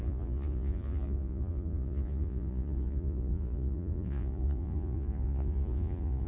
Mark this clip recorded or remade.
remade